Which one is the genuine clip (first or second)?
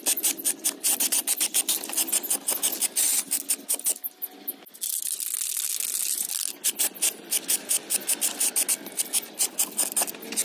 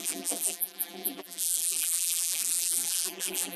first